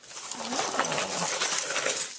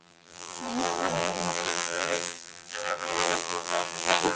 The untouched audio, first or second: first